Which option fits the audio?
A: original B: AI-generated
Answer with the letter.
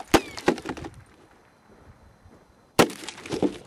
A